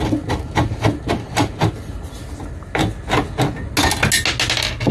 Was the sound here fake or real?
real